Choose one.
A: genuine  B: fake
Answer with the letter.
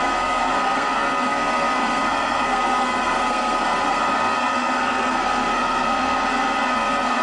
B